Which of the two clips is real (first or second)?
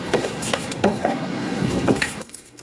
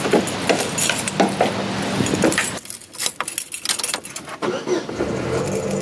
second